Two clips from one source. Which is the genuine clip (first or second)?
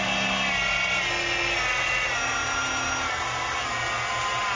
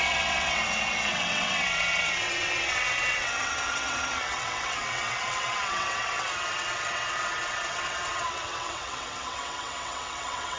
first